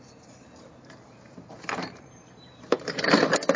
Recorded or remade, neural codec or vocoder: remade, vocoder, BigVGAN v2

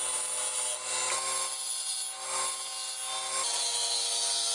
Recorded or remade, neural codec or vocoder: recorded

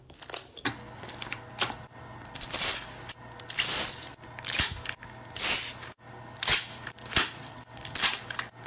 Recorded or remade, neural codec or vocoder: recorded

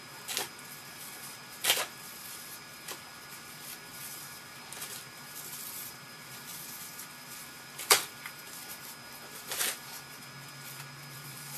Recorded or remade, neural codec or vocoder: remade, vocoder, BigVGAN v2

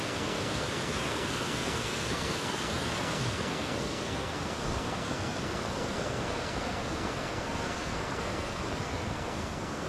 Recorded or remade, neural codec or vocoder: remade, codec, SNAC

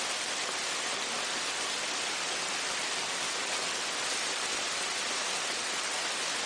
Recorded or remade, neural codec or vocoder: recorded